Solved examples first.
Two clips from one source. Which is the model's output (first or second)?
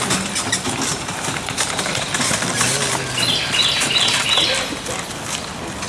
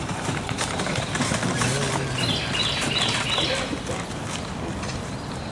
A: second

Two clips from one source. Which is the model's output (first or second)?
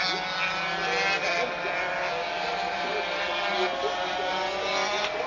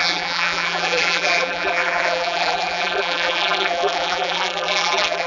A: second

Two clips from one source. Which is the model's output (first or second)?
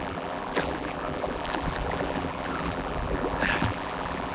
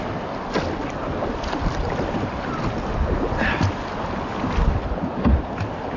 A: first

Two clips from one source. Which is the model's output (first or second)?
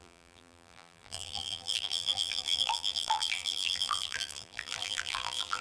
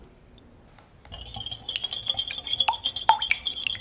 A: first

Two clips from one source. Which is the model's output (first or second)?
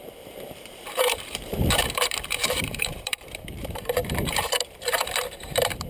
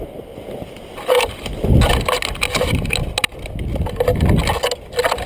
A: first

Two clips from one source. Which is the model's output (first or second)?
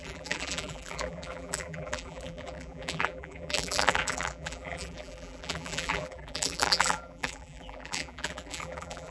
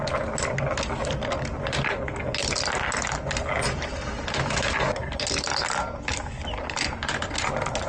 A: first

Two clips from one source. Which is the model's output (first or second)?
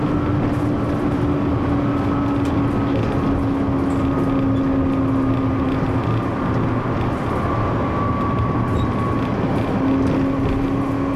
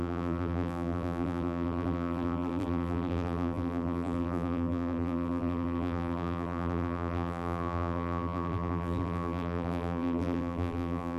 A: second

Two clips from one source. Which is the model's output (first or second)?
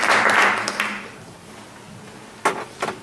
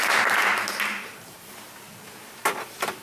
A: second